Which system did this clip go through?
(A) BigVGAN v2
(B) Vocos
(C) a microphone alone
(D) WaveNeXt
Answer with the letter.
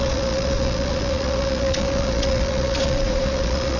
B